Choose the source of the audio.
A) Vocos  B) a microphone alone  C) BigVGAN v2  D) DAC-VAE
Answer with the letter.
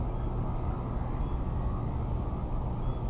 B